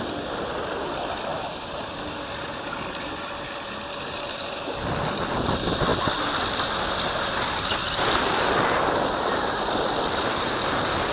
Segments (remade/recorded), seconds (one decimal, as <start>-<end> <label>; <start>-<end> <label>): 0.0-11.1 recorded